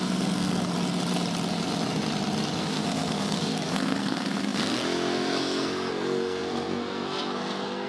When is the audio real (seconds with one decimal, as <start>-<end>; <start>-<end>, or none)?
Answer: 0.7-2.6